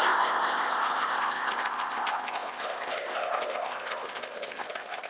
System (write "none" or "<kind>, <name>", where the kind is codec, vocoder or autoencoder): codec, ZipCodec